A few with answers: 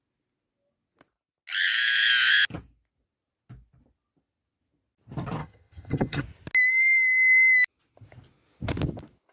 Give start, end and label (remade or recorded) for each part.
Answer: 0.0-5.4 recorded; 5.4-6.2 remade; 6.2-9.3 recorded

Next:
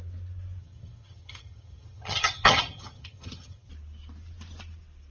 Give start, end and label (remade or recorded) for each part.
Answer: 0.0-0.6 recorded; 0.6-3.7 remade; 3.7-5.1 recorded

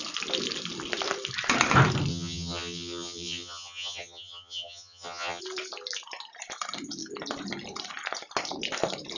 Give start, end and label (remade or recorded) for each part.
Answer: 0.0-2.1 recorded; 2.1-5.4 remade; 5.4-9.2 recorded